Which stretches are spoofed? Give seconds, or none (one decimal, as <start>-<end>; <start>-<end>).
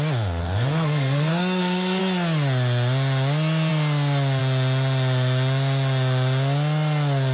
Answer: 0.4-2.0